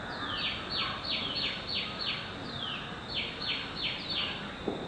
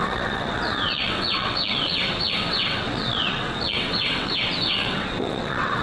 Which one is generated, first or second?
second